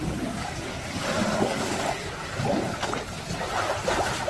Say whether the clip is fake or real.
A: real